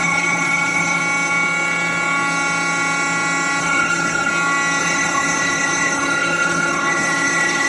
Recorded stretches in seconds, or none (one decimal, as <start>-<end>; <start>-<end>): 1.0-3.6; 4.3-4.8